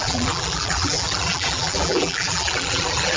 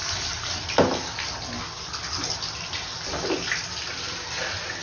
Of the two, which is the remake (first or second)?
first